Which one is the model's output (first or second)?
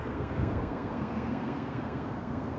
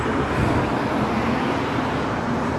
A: first